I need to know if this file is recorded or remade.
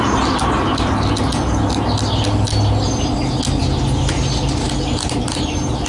recorded